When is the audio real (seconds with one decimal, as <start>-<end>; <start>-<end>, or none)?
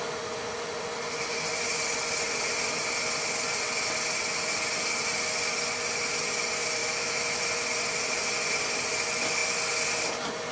0.0-6.8; 7.4-10.5